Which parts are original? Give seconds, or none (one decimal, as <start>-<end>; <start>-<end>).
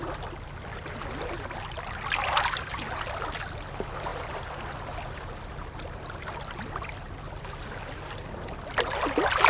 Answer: 0.0-9.5